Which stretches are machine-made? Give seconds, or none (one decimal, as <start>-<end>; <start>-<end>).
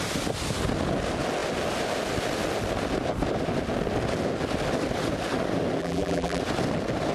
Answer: 5.8-6.4